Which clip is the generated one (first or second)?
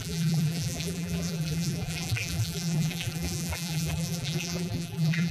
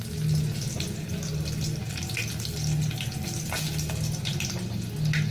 first